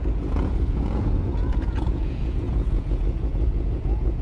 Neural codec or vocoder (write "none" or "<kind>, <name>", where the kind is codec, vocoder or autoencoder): vocoder, Vocos